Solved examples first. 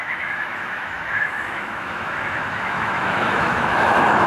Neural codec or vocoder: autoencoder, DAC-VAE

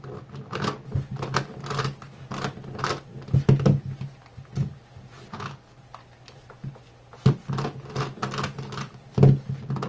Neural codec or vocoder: none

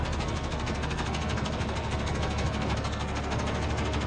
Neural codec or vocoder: codec, SNAC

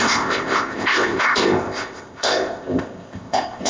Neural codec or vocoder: codec, ZipCodec